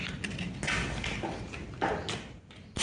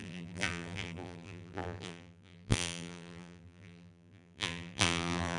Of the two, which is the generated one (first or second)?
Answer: second